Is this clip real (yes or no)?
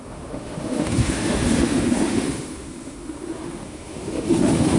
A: no